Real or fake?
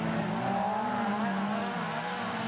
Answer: real